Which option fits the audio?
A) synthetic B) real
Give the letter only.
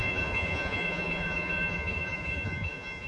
A